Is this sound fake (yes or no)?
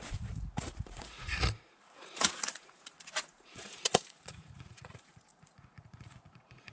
yes